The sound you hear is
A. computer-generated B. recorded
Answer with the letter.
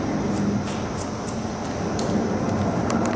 B